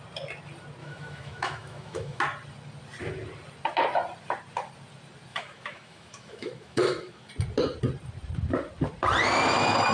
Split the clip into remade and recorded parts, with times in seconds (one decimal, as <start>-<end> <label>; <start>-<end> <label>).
0.0-0.8 recorded; 0.8-2.2 remade; 2.2-5.3 recorded; 5.3-7.3 remade; 7.3-9.9 recorded